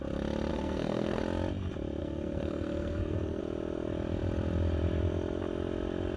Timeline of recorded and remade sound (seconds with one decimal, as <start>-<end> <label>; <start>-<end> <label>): 0.0-0.5 recorded; 0.5-1.2 remade; 1.2-2.0 recorded; 2.0-3.4 remade; 3.4-6.2 recorded